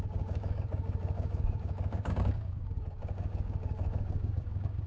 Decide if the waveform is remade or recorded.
remade